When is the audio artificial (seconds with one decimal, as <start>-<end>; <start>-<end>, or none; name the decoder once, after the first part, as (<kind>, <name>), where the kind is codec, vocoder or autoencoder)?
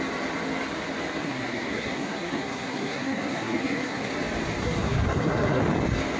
1.2-4.1 (codec, SNAC); 4.6-5.6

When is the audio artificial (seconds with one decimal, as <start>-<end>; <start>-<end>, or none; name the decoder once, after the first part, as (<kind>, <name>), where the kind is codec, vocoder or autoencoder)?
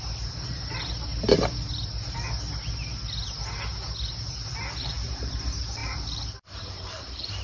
0.0-1.1 (vocoder, BigVGAN v2); 4.8-7.4